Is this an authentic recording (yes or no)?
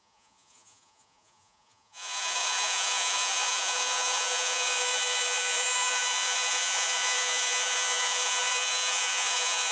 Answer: no